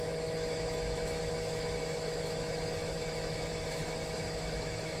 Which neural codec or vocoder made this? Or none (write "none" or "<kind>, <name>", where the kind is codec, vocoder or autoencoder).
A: autoencoder, DAC-VAE